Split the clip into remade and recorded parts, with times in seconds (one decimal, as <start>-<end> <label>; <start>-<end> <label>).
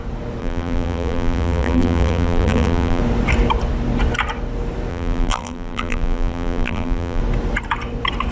0.0-0.4 recorded; 0.4-3.0 remade; 3.0-4.9 recorded; 4.9-7.2 remade; 7.2-8.3 recorded